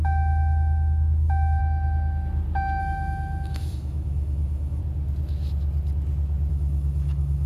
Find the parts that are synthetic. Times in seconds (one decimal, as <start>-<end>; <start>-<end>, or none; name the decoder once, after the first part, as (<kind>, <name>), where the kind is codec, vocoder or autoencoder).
0.0-1.6 (autoencoder, DAC-VAE); 2.8-4.8; 6.5-7.5